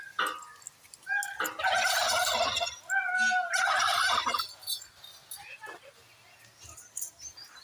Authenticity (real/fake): real